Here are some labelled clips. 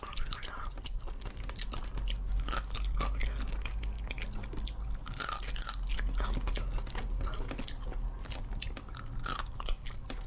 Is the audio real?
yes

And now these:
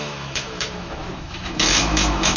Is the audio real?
no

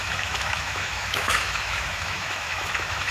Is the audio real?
no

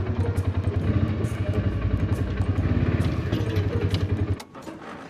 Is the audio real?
yes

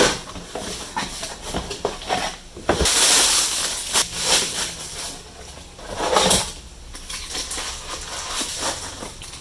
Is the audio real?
yes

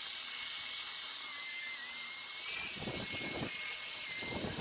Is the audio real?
yes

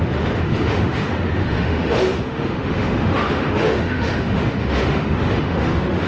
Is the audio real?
no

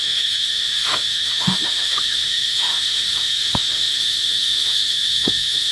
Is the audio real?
no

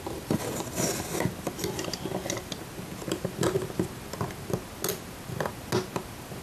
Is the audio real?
yes